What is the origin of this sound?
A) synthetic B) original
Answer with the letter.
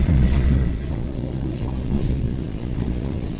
A